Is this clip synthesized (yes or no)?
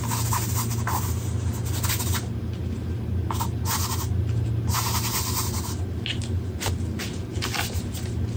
no